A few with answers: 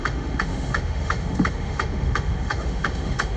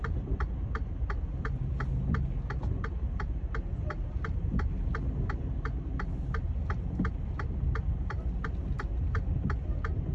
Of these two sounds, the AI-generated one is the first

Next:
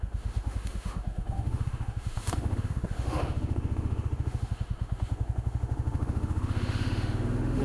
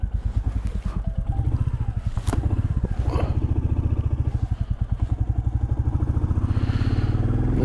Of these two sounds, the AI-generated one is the first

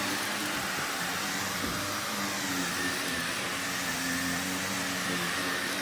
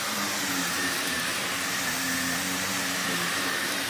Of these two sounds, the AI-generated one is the second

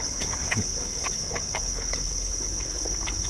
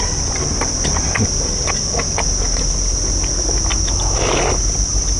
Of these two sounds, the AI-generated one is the first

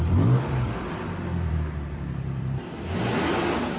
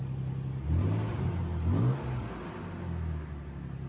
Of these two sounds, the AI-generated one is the first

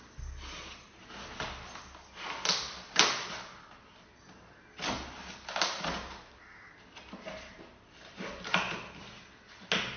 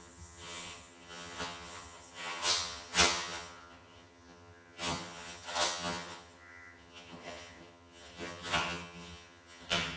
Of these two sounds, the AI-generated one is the second